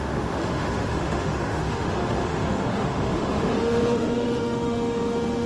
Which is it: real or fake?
fake